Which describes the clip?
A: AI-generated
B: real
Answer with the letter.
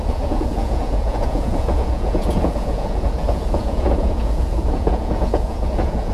A